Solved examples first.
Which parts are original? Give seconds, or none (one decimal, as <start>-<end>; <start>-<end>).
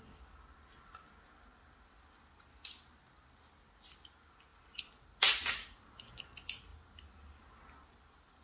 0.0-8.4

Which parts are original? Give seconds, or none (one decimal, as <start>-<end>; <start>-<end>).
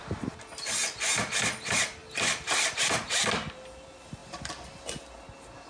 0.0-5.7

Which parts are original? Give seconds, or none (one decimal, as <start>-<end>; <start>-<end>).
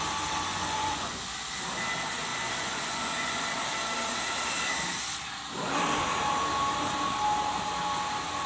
0.0-0.5; 1.2-2.3; 3.4-8.5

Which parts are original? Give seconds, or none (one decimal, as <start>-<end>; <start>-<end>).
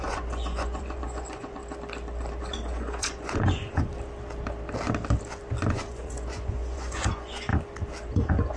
1.6-2.4; 3.9-5.7; 7.5-8.1